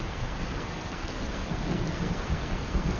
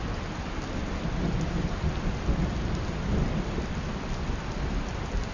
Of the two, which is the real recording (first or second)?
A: second